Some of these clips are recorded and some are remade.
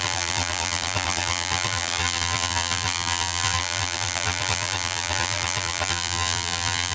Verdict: remade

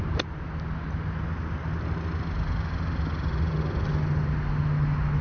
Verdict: recorded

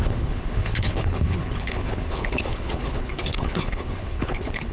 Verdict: remade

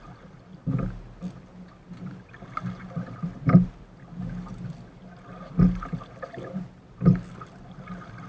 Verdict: recorded